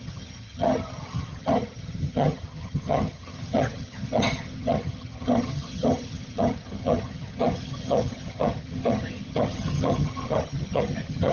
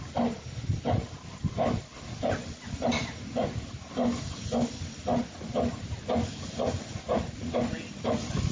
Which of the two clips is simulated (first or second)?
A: first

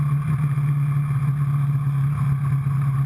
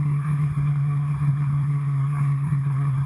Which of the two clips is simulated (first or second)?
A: second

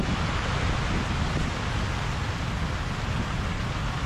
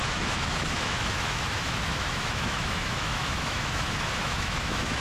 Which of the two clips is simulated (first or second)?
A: second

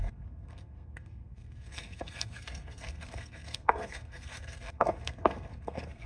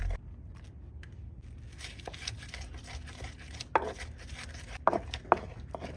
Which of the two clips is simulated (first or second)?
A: first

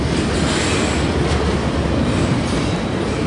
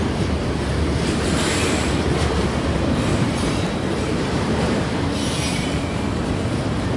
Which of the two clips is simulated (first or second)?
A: second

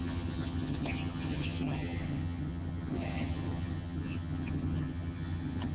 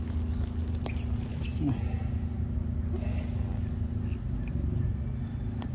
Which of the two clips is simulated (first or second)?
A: first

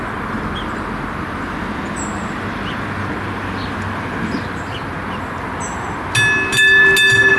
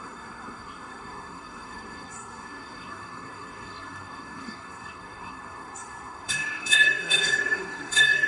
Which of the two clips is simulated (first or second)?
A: second